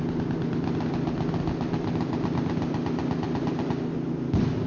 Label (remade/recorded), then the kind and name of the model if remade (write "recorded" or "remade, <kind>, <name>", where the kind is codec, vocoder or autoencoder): recorded